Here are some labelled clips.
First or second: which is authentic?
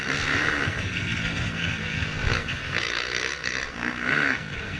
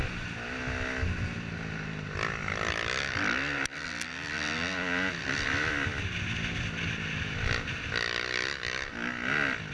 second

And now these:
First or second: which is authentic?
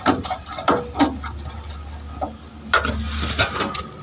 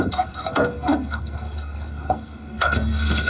first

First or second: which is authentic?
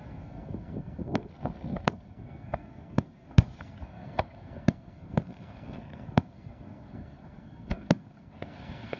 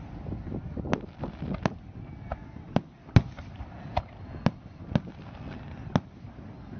second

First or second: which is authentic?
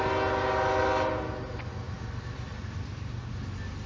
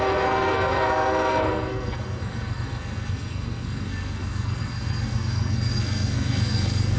first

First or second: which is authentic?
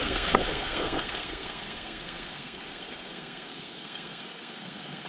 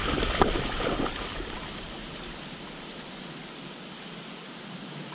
second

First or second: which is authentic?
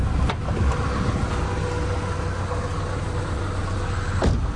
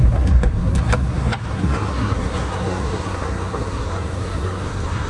first